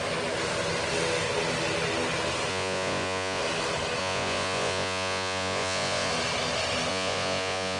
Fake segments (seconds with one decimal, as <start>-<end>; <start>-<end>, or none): 2.5-3.4; 4.0-6.1; 6.9-7.8